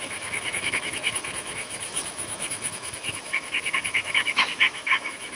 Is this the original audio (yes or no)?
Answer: no